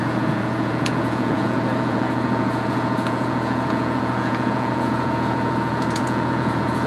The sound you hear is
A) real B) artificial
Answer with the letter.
B